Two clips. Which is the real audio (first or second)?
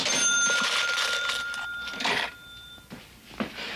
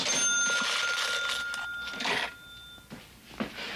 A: second